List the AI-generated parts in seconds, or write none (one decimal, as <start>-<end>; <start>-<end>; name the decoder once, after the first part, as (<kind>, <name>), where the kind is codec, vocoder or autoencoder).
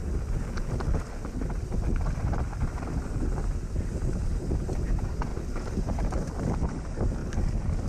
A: 5.3-6.3 (vocoder, BigVGAN v2)